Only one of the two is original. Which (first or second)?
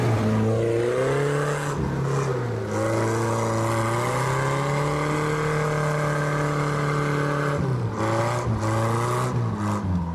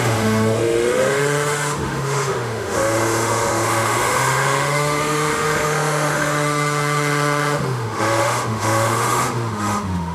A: first